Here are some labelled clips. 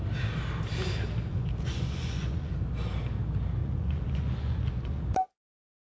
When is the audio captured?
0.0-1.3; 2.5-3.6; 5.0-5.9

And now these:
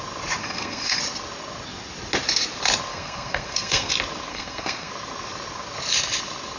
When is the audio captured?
0.0-0.4; 1.0-2.9; 3.9-4.3; 4.9-6.6

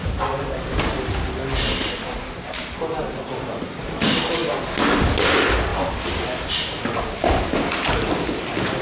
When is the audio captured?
0.0-8.8

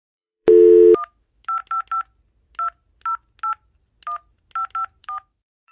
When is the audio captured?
1.6-5.0

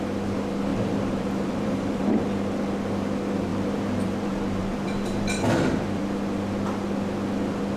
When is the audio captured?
0.0-0.7; 2.1-3.5; 6.0-7.8